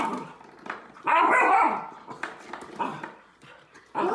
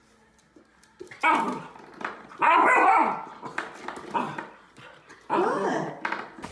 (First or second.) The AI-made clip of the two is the first